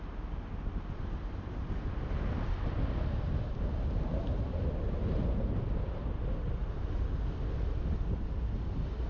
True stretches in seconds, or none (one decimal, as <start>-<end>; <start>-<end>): 0.0-9.1